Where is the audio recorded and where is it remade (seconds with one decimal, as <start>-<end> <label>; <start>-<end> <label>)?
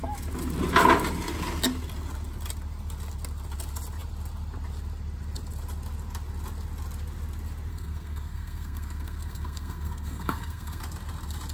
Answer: 0.0-7.7 recorded; 7.7-10.8 remade; 10.8-11.5 recorded